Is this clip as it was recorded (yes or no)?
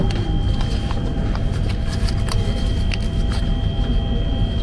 yes